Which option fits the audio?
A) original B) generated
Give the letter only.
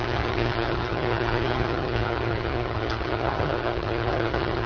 B